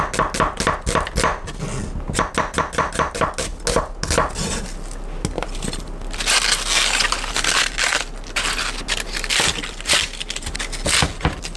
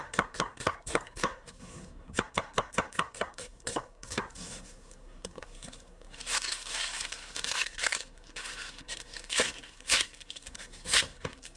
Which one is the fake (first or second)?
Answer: second